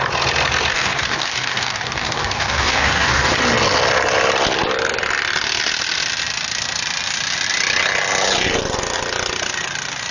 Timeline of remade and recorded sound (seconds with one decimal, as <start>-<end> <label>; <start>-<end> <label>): 0.0-0.7 recorded; 0.7-3.3 remade; 3.3-10.1 recorded